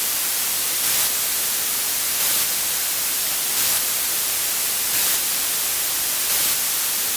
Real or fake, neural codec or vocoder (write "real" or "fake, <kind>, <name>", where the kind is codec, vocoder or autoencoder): fake, vocoder, BigVGAN v2